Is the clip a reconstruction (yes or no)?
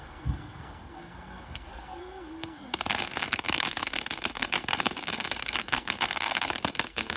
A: yes